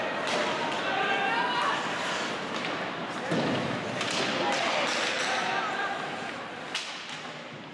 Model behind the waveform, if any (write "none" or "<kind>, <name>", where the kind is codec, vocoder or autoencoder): none